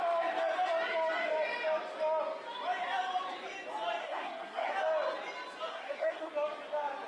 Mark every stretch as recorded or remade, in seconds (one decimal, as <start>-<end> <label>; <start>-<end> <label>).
0.0-4.0 recorded; 4.0-4.7 remade; 4.7-5.7 recorded; 5.7-6.3 remade; 6.3-7.1 recorded